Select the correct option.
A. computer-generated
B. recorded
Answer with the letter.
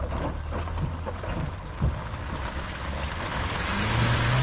B